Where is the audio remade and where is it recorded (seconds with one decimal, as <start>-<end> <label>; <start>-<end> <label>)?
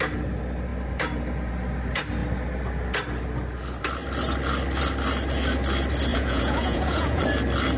0.0-6.1 recorded; 6.1-7.2 remade; 7.2-7.8 recorded